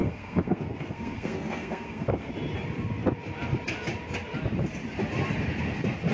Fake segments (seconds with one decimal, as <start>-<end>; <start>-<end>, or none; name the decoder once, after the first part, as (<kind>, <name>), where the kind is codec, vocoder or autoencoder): 0.0-2.3 (codec, SNAC)